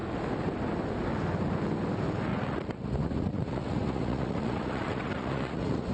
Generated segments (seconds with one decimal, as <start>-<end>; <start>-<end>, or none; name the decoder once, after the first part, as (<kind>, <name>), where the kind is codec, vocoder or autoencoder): 2.3-5.9 (vocoder, Vocos)